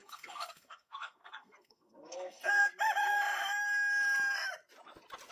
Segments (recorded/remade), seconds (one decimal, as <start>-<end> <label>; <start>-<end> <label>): 0.0-2.7 remade; 2.7-5.3 recorded